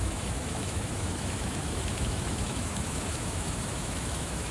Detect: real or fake fake